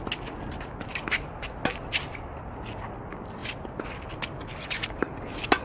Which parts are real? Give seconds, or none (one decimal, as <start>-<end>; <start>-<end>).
0.0-5.6